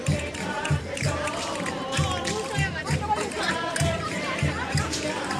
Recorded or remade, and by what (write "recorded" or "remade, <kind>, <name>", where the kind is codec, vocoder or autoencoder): remade, vocoder, BigVGAN v2